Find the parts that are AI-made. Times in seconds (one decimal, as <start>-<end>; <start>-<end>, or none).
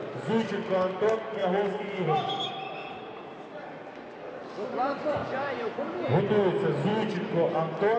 1.4-2.3; 2.8-3.3; 5.2-6.3